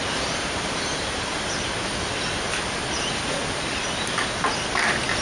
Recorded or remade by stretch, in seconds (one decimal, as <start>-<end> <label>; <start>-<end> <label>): 0.0-1.9 remade; 1.9-5.2 recorded